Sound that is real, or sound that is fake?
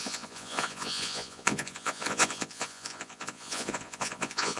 fake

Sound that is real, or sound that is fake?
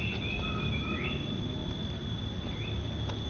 real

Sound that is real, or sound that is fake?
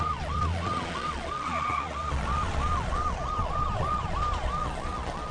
fake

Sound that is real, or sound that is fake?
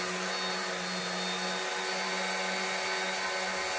real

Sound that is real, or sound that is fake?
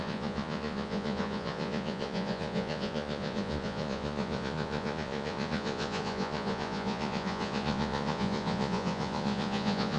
fake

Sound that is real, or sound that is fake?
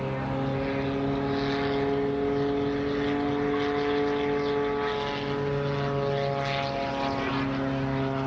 real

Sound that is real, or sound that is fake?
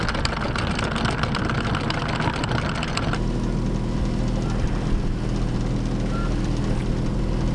real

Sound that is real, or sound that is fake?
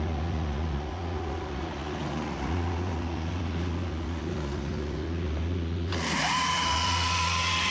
fake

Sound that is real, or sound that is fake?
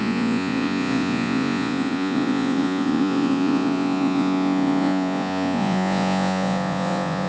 fake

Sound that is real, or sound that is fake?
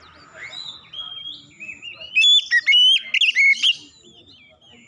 real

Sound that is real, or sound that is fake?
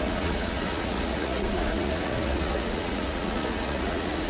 fake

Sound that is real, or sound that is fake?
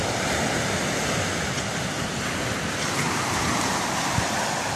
real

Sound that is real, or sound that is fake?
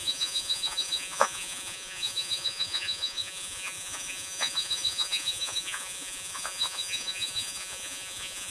fake